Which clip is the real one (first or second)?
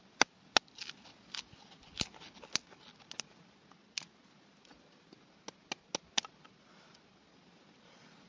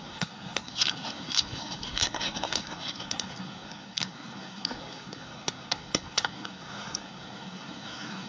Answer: first